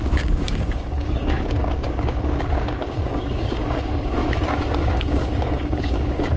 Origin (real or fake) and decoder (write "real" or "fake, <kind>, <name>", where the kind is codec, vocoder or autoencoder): fake, codec, DAC